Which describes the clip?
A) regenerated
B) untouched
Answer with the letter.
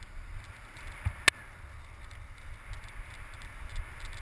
B